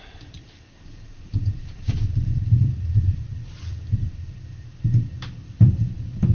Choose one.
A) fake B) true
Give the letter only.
A